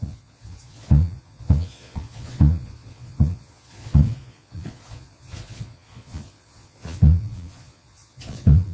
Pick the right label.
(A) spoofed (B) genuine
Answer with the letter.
A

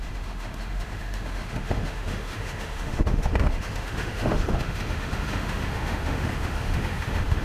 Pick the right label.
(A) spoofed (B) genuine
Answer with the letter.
A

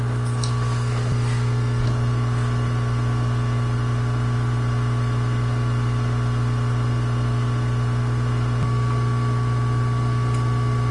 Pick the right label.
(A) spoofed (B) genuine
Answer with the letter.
B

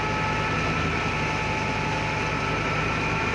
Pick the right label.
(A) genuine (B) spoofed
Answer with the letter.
A